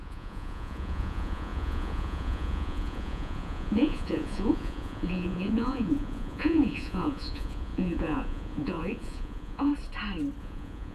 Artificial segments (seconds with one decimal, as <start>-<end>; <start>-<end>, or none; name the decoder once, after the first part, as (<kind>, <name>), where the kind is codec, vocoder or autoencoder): 0.0-9.7 (vocoder, Vocos); 10.4-10.9